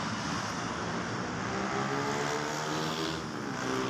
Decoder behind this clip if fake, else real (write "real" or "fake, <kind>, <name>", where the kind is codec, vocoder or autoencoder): real